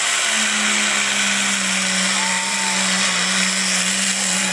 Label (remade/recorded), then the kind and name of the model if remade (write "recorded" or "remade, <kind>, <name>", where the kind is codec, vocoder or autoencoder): recorded